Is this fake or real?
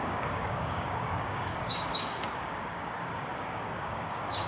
fake